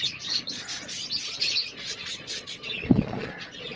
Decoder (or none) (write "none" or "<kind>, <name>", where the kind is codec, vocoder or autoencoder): vocoder, Vocos